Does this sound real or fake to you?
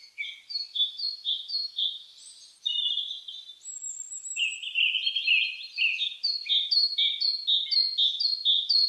real